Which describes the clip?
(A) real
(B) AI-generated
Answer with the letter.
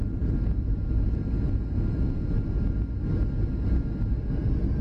A